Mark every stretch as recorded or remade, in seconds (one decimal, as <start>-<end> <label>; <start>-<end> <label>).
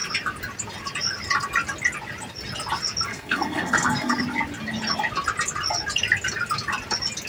0.0-3.1 recorded; 3.1-4.2 remade; 4.2-7.3 recorded